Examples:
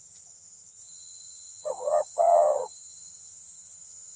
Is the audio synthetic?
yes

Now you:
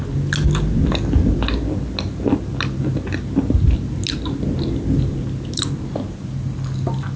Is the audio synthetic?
no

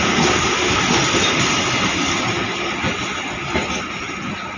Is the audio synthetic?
no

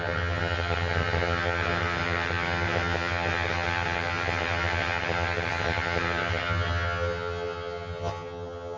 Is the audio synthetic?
yes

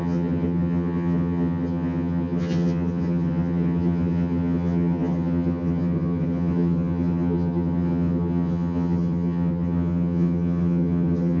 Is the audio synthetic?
yes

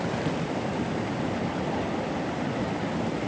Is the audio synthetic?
no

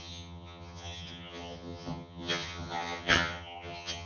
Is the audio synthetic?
yes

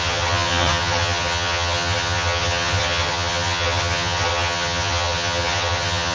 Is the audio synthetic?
yes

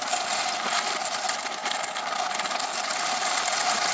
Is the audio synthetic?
no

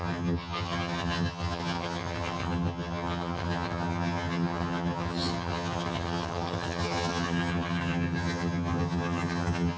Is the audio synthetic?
yes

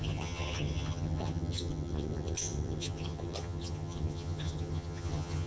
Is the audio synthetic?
yes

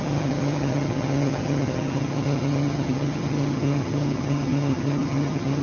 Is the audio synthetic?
yes